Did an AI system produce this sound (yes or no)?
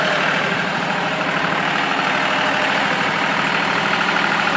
yes